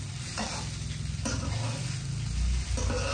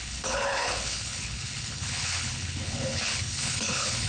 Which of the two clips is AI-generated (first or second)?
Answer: second